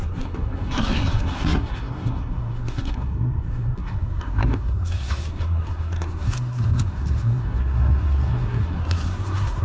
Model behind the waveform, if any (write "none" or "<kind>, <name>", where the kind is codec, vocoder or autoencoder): codec, SNAC